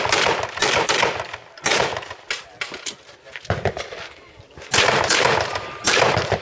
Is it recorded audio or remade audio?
recorded